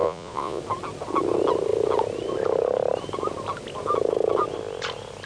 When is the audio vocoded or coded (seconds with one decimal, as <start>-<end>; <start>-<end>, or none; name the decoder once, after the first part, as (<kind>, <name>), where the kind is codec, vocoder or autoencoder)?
0.0-0.6 (vocoder, Vocos)